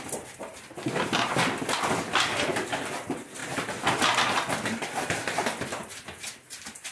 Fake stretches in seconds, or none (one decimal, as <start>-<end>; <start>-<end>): none